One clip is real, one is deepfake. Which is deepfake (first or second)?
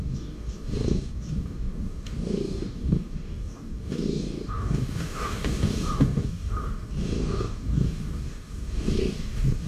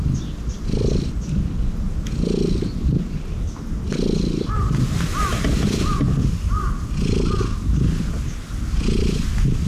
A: first